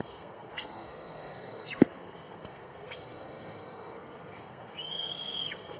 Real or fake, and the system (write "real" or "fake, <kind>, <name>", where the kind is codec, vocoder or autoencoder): fake, codec, SNAC